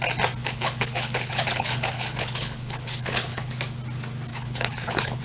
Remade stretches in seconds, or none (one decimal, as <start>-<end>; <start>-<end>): 0.4-3.5; 4.3-5.2